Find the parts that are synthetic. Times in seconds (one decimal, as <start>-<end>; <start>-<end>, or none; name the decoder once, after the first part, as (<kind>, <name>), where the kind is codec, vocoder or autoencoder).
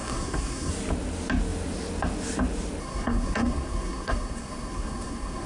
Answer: 0.0-0.7 (codec, SNAC); 2.8-5.5